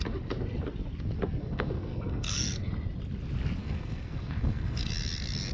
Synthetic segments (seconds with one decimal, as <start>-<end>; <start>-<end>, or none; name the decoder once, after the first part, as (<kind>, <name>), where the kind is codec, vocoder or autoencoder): 1.4-2.7 (codec, SNAC); 3.6-4.9